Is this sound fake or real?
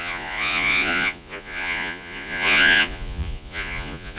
fake